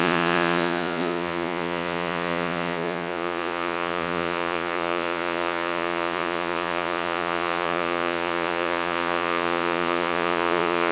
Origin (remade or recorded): remade